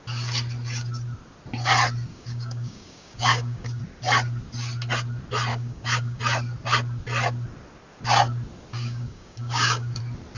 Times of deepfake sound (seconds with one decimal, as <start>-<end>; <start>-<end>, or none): 2.1-3.8; 5.5-6.2; 8.7-10.0